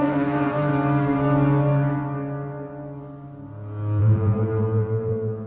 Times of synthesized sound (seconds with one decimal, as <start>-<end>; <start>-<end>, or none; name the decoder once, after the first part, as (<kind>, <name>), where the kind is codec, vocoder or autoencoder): 0.0-0.7 (vocoder, BigVGAN v2); 4.0-5.5

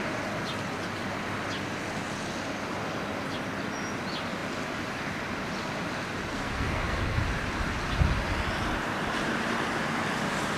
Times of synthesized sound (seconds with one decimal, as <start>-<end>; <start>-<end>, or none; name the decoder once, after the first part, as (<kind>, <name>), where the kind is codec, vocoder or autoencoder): 6.3-7.2 (codec, SNAC)

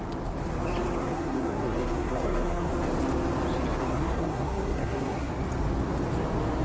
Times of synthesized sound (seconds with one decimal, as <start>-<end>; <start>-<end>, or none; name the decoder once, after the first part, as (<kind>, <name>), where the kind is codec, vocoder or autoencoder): 1.0-2.7 (codec, SNAC); 3.8-5.3

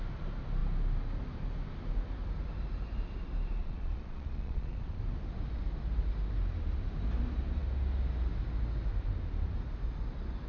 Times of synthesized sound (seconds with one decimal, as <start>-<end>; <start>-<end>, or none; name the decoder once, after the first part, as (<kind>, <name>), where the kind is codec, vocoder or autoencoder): 3.6-5.0 (vocoder, Vocos)

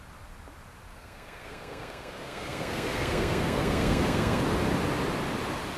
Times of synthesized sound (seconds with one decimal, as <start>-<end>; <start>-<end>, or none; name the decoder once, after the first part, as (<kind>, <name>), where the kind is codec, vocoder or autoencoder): 0.9-4.4 (codec, SNAC)

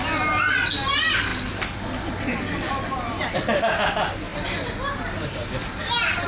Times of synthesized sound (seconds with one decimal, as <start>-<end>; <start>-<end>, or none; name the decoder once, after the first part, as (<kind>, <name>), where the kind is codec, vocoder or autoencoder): none

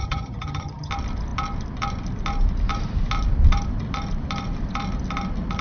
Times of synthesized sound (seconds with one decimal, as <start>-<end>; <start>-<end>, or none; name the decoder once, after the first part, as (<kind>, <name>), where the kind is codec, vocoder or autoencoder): 0.0-0.9 (vocoder, HiFi-GAN)